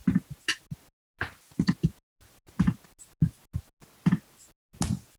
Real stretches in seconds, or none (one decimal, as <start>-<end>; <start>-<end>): 0.0-5.2